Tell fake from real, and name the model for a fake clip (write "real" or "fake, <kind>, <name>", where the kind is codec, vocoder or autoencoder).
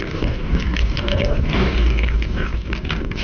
fake, codec, DAC